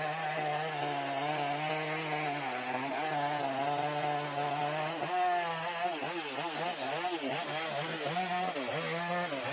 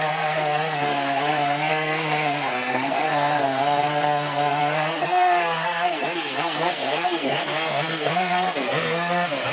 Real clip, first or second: first